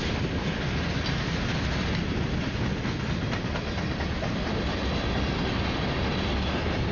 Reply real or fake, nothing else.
real